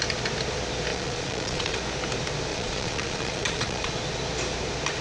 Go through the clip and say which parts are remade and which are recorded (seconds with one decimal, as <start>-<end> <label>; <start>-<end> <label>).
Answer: 0.0-0.9 recorded; 0.9-1.8 remade; 1.8-2.5 recorded; 2.5-3.9 remade; 3.9-5.0 recorded